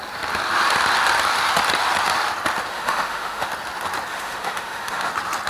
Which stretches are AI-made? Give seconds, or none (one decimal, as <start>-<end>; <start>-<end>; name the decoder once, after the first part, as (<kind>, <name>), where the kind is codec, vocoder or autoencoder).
2.7-3.5 (autoencoder, DAC-VAE); 4.1-5.1

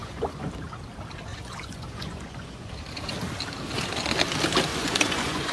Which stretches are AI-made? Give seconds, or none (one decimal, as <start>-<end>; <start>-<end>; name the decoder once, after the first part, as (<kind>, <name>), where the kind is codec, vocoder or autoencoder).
0.0-0.5 (vocoder, Vocos); 1.3-2.7; 4.7-5.5

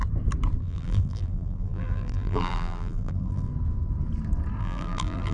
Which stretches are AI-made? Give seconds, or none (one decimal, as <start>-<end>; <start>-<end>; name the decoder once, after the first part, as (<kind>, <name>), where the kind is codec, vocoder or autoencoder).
0.6-3.5 (vocoder, BigVGAN v2); 4.6-5.3

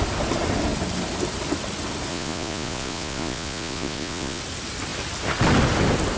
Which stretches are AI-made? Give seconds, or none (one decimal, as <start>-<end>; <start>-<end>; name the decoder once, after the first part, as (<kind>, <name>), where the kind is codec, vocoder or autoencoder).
2.1-4.4 (vocoder, Vocos)